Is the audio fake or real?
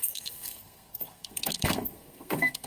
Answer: fake